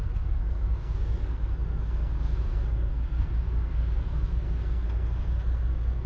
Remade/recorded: remade